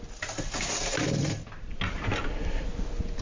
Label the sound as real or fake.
real